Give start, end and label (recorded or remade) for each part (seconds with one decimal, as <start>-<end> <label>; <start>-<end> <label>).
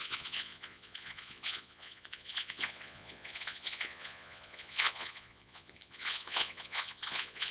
0.0-7.5 remade